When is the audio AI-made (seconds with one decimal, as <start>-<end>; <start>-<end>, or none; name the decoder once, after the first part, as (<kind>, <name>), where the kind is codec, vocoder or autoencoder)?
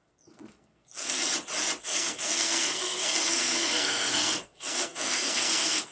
0.0-1.2 (codec, SNAC); 1.8-5.9